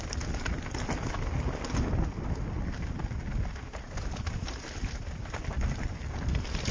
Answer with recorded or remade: recorded